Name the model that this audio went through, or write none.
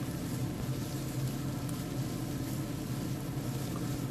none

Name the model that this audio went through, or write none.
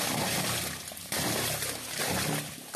none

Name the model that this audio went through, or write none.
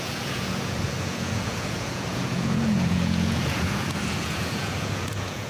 vocoder, Vocos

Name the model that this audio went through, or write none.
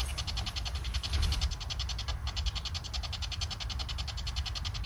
none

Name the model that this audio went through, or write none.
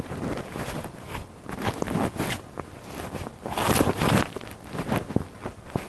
none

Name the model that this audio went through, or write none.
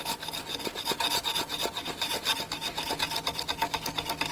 none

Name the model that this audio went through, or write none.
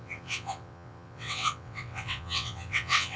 vocoder, WaveNeXt